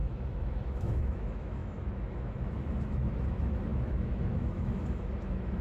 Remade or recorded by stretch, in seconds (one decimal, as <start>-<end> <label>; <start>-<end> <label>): 0.0-5.6 remade